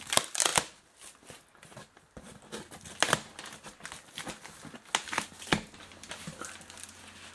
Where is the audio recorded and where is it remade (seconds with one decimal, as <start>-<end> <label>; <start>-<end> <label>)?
0.0-7.3 recorded